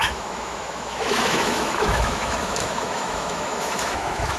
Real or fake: fake